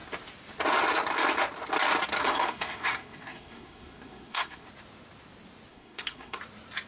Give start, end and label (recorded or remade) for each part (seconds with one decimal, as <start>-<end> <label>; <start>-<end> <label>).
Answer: 0.0-2.2 recorded; 2.2-4.7 remade; 4.7-5.7 recorded; 5.7-6.4 remade; 6.4-6.9 recorded